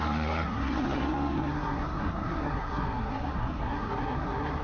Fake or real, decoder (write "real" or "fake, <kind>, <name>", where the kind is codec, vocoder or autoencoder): fake, codec, SNAC